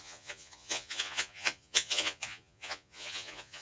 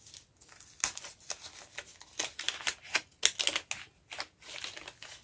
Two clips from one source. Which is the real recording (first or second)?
second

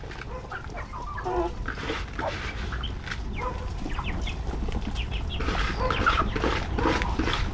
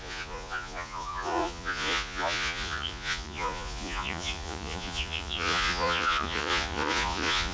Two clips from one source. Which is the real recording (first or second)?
first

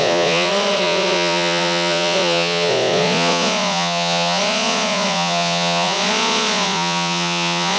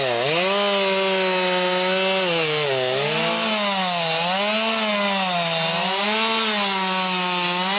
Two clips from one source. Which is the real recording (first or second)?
second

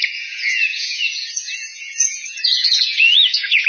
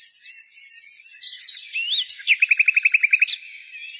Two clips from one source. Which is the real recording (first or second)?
second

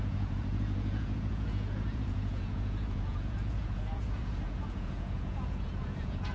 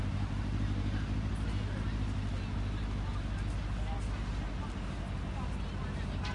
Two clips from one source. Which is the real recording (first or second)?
second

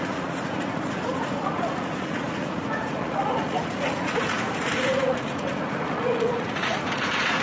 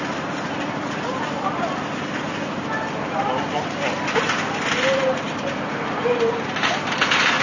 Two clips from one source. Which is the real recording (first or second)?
second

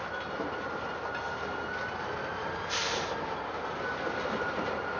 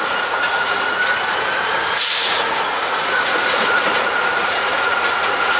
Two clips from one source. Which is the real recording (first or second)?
first